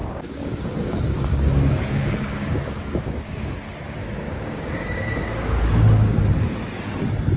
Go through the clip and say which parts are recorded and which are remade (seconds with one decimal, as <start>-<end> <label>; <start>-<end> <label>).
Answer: 0.0-3.5 remade; 3.5-4.0 recorded; 4.0-6.2 remade; 6.2-7.4 recorded